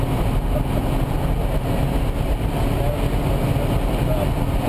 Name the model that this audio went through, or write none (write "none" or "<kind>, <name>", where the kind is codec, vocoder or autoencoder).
none